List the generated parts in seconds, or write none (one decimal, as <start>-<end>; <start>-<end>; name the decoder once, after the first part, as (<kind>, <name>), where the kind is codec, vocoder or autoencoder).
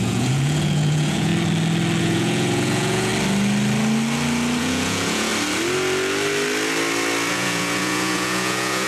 0.0-1.3 (vocoder, Vocos); 2.0-3.1; 4.6-5.3; 7.3-8.9